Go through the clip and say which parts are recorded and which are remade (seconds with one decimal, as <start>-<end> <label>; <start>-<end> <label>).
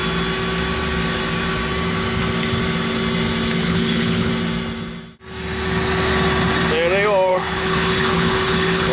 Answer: 0.0-3.6 recorded; 3.6-4.3 remade; 4.3-7.3 recorded; 7.3-8.9 remade